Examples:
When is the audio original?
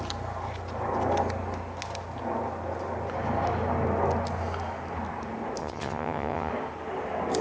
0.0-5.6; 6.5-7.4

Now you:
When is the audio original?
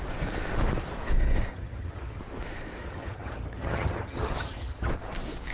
0.0-1.5; 2.2-2.8; 4.9-5.5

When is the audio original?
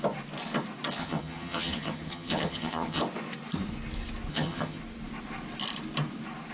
0.0-1.0; 3.0-4.3; 4.8-6.5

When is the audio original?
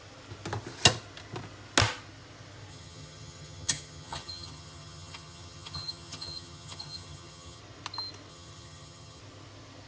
0.0-2.7; 7.6-8.3; 9.2-9.9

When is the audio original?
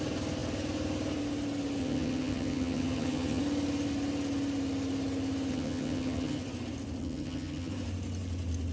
0.0-1.8; 3.4-5.5; 6.4-7.0; 7.7-8.7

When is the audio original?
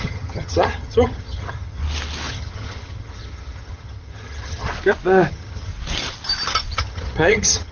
1.8-2.3; 4.7-5.3; 5.7-6.8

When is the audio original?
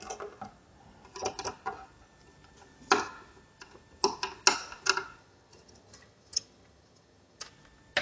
0.0-5.2; 7.4-8.0